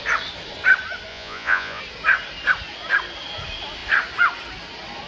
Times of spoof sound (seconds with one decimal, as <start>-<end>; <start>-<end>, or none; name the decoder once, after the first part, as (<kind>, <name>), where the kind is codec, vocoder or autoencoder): 1.1-1.8 (vocoder, Vocos)

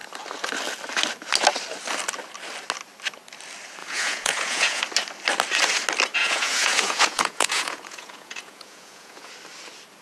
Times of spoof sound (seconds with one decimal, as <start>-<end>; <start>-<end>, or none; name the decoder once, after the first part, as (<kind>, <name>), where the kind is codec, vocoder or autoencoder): 3.8-4.8 (vocoder, Vocos); 6.2-9.3

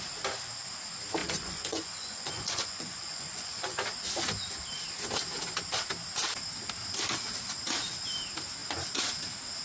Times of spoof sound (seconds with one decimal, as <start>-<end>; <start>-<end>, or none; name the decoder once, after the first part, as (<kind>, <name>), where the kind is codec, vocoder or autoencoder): 1.2-3.8 (vocoder, Vocos)

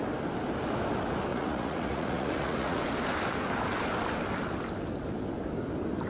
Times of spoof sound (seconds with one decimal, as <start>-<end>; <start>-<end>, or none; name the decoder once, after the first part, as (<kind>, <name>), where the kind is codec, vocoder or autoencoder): 1.3-2.8 (vocoder, Vocos)